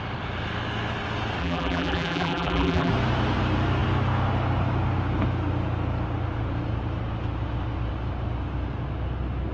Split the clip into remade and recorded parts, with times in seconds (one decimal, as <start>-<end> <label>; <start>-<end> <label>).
0.0-1.4 recorded; 1.4-2.9 remade; 2.9-9.5 recorded